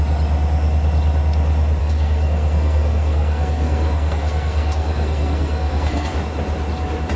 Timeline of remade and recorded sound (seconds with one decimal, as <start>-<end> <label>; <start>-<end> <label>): 0.0-1.8 recorded; 1.8-6.1 remade; 6.1-7.2 recorded